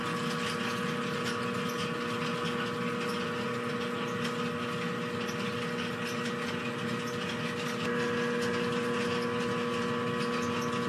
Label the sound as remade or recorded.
recorded